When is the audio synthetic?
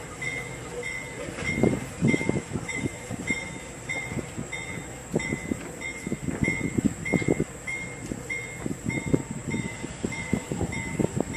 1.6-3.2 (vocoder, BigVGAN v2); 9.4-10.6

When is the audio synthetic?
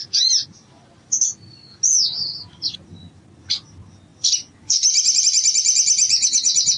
none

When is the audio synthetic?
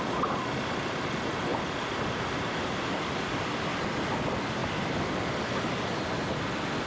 1.5-2.7 (vocoder, BigVGAN v2)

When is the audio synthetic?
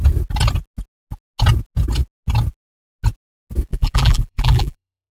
3.7-5.1 (vocoder, BigVGAN v2)